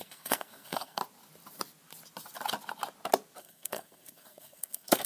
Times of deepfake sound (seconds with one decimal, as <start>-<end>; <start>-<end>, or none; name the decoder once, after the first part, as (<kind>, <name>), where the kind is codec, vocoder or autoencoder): 0.0-1.0 (codec, SNAC); 3.4-5.1